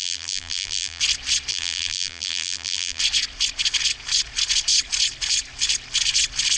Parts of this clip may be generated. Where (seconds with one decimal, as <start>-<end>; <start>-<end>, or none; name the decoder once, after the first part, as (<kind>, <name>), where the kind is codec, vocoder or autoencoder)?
0.0-1.0 (vocoder, BigVGAN v2); 1.5-3.0